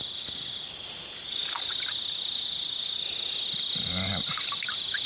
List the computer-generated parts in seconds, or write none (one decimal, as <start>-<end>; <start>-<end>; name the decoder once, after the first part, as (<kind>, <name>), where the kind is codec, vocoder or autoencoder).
none